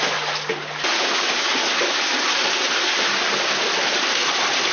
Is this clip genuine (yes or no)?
yes